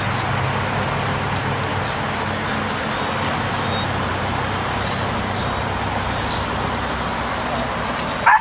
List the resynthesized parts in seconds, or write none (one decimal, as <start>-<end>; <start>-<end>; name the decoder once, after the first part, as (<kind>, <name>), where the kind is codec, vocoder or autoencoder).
4.1-4.9 (vocoder, BigVGAN v2)